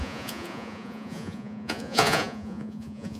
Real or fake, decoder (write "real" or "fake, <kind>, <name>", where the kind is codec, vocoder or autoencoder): fake, vocoder, Vocos